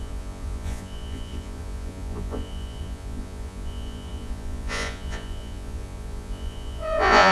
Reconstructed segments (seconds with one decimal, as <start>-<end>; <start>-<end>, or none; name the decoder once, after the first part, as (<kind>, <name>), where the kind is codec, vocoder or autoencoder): 0.0-7.3 (vocoder, Vocos)